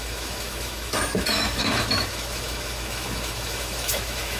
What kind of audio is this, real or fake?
fake